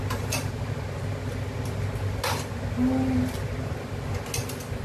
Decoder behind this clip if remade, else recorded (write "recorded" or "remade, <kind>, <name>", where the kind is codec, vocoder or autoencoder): recorded